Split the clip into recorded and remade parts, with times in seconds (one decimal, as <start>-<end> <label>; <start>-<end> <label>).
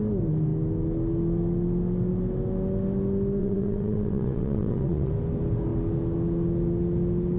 0.0-3.4 recorded; 3.4-5.1 remade; 5.1-7.4 recorded